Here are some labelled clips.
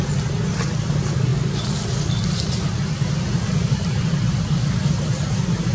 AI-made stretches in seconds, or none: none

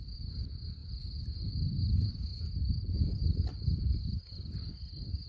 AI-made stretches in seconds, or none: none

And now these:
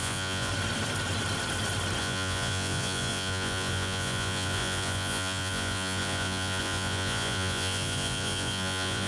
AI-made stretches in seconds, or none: 0.0-0.5 (vocoder, Vocos); 2.0-9.1

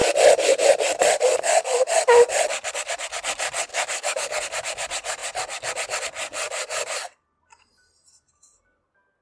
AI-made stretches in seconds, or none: 3.7-4.4 (codec, DAC)